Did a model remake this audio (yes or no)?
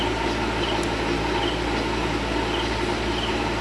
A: no